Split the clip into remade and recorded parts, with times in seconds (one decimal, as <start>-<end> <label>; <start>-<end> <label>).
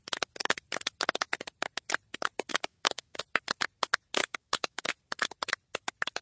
0.0-2.5 recorded; 2.5-3.2 remade; 3.2-4.2 recorded; 4.2-4.9 remade; 4.9-6.2 recorded